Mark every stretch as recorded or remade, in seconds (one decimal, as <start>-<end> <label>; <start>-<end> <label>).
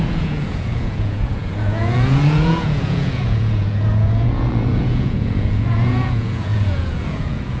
0.0-7.6 remade